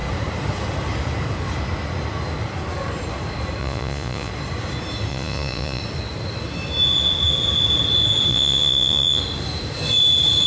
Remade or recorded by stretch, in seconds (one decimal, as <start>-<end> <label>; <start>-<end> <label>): 0.0-3.6 recorded; 3.6-4.3 remade; 4.3-5.1 recorded; 5.1-5.8 remade; 5.8-8.3 recorded; 8.3-9.2 remade; 9.2-10.5 recorded